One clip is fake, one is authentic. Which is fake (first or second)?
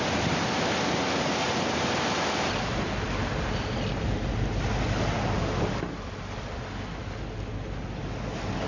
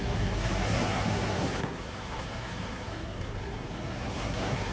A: second